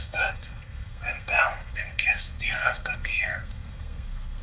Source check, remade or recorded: remade